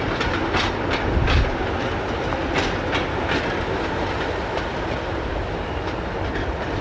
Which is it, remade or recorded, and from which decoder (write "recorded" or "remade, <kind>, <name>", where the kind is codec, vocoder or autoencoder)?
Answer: recorded